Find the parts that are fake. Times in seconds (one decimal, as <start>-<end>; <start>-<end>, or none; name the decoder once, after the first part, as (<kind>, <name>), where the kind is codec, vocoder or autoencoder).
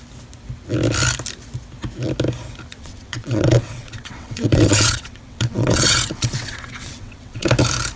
2.7-7.5 (vocoder, WaveNeXt)